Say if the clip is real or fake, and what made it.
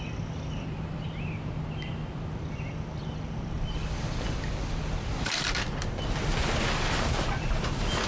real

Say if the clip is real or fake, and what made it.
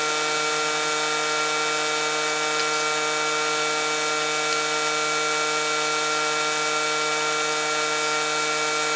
real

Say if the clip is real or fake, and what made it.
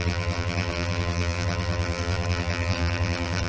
fake, vocoder, BigVGAN v2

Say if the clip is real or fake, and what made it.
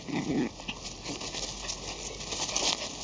real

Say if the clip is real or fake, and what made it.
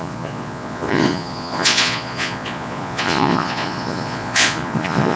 fake, vocoder, Vocos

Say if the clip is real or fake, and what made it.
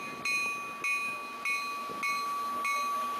real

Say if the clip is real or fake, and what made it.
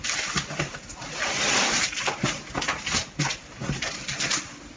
real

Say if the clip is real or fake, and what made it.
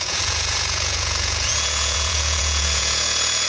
fake, vocoder, Vocos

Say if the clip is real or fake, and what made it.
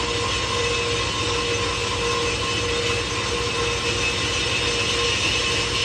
real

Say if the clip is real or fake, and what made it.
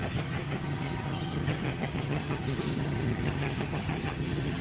fake, vocoder, HiFi-GAN